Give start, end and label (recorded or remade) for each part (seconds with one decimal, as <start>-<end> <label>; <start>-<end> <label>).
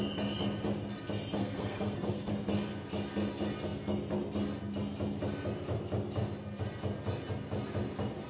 0.0-1.4 recorded; 1.4-2.3 remade; 2.3-8.3 recorded